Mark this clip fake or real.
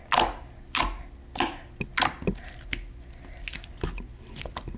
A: real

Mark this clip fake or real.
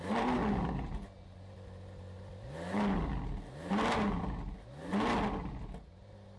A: real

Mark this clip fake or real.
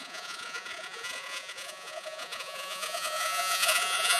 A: fake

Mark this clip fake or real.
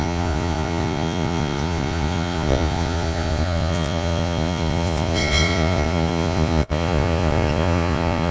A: fake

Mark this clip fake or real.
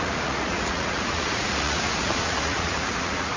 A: fake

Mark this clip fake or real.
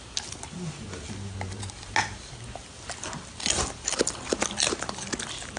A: real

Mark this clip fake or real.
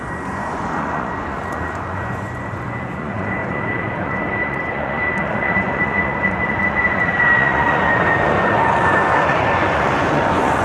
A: fake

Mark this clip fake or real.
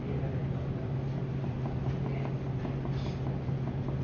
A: real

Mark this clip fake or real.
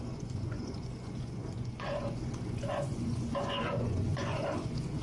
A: fake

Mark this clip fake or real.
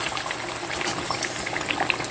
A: real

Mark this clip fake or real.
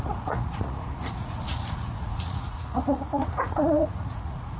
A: fake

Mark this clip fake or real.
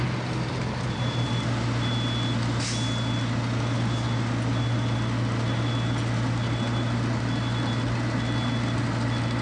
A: real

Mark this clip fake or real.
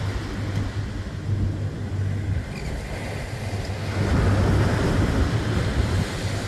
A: real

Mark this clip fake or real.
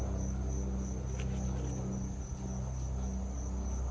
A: real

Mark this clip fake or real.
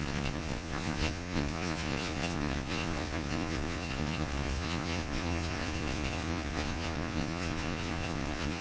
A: fake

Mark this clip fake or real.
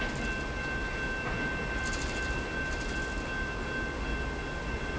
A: real